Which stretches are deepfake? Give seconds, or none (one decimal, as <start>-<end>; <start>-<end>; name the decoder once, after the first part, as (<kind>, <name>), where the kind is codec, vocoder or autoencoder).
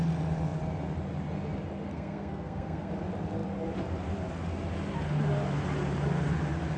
1.9-2.9 (codec, SNAC)